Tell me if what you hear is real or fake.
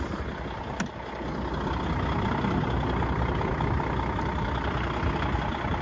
real